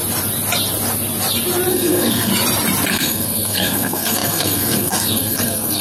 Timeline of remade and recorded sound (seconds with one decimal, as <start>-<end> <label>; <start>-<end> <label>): 0.0-1.7 recorded; 1.7-2.3 remade; 2.3-2.9 recorded; 2.9-5.8 remade